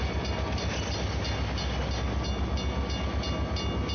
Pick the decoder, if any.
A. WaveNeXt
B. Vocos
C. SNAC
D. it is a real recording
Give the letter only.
D